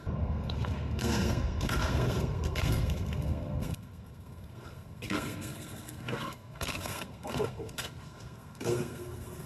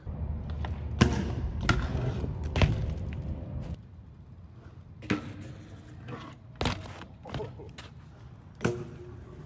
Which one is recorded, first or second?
second